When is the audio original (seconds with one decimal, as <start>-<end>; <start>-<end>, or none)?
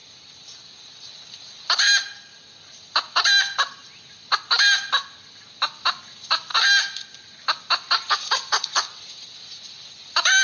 0.0-10.4